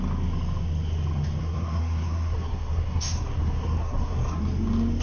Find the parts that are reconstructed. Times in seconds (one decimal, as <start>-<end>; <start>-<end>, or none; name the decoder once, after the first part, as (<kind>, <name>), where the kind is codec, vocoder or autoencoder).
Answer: 1.4-4.4 (codec, SNAC)